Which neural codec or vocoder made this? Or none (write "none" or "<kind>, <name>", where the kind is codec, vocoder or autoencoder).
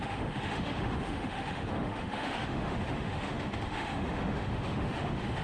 autoencoder, DAC-VAE